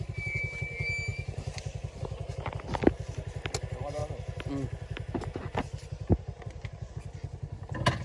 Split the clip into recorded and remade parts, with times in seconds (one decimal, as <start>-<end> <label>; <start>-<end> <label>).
0.0-8.0 recorded